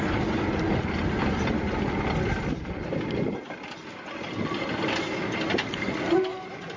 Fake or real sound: real